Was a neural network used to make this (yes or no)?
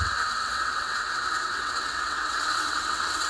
yes